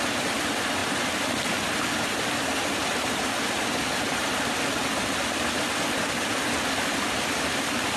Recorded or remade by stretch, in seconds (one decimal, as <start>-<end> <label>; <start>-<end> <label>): 0.0-8.0 recorded